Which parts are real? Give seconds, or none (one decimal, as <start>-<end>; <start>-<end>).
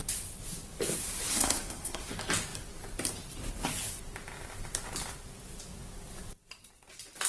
0.0-1.3; 2.1-7.3